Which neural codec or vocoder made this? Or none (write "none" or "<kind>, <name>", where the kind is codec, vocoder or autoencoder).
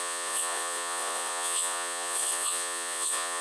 vocoder, Vocos